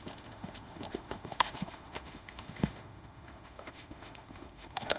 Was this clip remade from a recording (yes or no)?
yes